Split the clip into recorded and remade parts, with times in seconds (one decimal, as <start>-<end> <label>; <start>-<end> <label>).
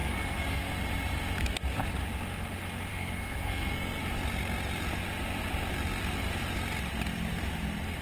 0.0-0.7 remade; 0.7-2.9 recorded; 2.9-4.0 remade; 4.0-8.0 recorded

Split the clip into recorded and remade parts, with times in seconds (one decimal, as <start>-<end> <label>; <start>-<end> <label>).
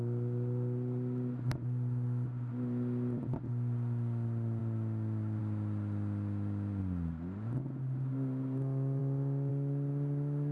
0.0-10.5 recorded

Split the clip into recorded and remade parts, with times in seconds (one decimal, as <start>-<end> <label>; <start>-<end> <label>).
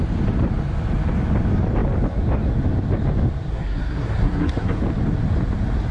0.0-3.5 recorded; 3.5-4.8 remade; 4.8-5.9 recorded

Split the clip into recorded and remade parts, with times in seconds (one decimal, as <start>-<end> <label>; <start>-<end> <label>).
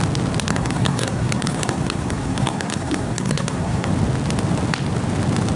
0.0-0.5 recorded; 0.5-3.9 remade; 3.9-5.6 recorded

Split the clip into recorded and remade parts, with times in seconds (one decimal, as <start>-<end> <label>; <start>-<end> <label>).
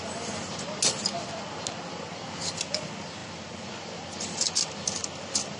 0.0-5.6 recorded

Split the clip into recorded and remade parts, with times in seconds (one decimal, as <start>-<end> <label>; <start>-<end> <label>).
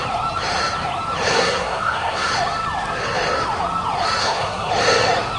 0.0-1.3 recorded; 1.3-2.3 remade; 2.3-4.2 recorded; 4.2-4.7 remade; 4.7-5.4 recorded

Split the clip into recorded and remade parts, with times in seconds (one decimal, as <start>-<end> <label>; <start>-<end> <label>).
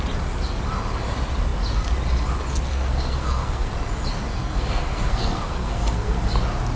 0.0-2.7 recorded; 2.7-3.7 remade; 3.7-4.3 recorded; 4.3-6.2 remade; 6.2-6.8 recorded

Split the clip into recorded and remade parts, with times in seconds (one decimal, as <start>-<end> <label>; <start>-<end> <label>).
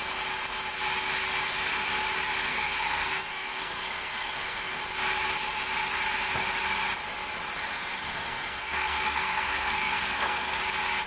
0.0-2.5 recorded; 2.5-4.8 remade; 4.8-7.7 recorded; 7.7-10.6 remade; 10.6-11.1 recorded